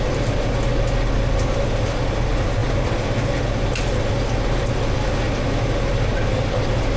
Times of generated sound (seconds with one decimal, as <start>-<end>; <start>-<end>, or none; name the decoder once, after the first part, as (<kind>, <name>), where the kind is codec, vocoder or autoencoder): none